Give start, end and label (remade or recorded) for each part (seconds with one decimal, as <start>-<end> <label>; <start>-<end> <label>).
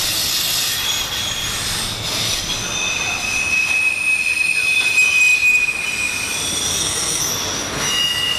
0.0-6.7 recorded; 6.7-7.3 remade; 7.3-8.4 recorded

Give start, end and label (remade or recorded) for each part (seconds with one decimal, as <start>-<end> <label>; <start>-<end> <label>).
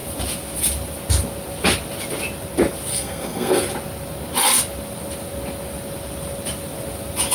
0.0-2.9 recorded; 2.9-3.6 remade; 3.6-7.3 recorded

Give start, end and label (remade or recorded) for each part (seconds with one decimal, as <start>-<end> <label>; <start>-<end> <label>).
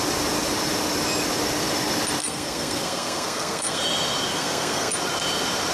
0.0-2.2 recorded; 2.2-3.8 remade; 3.8-4.3 recorded; 4.3-4.9 remade; 4.9-5.7 recorded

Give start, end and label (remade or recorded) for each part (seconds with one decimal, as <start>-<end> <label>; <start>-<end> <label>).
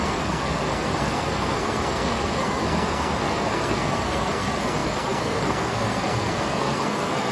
0.0-7.3 remade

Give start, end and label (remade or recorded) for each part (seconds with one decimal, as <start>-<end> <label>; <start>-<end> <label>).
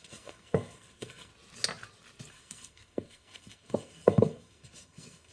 0.0-1.3 remade; 1.3-2.3 recorded; 2.3-5.3 remade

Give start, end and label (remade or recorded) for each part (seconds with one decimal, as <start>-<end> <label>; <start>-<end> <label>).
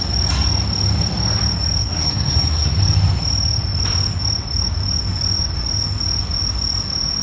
0.0-1.8 recorded; 1.8-2.8 remade; 2.8-7.2 recorded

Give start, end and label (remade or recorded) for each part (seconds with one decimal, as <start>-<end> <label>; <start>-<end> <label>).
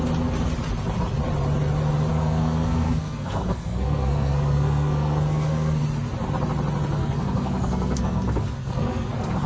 0.0-2.1 recorded; 2.1-5.8 remade; 5.8-7.0 recorded; 7.0-9.5 remade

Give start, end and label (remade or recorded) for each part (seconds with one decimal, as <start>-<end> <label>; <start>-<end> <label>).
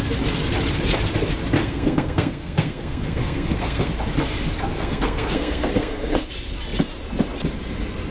0.0-1.6 recorded; 1.6-3.9 remade; 3.9-4.7 recorded; 4.7-6.3 remade; 6.3-8.1 recorded